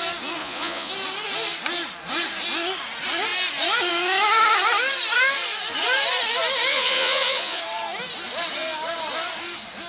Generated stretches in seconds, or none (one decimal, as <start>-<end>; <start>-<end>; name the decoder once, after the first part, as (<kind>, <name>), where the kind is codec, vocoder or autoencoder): 0.4-0.9 (vocoder, Vocos); 6.7-7.6